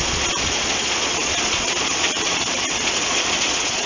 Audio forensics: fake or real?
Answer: fake